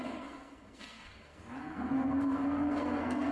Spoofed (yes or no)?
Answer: yes